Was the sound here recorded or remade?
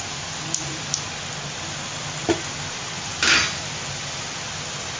recorded